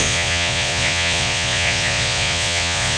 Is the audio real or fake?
fake